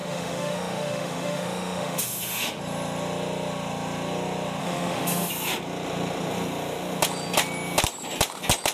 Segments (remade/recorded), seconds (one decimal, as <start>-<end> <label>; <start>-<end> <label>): 0.0-2.6 remade; 2.6-4.6 recorded; 4.6-5.3 remade; 5.3-8.7 recorded